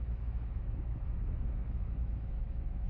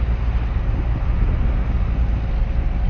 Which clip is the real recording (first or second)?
second